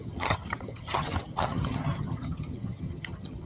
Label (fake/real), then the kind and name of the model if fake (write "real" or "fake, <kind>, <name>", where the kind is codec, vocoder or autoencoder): fake, vocoder, HiFi-GAN